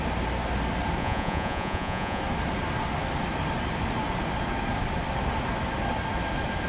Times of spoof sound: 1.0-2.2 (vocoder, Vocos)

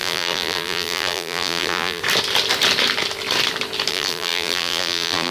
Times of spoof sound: 0.0-2.0 (vocoder, BigVGAN v2); 3.9-5.3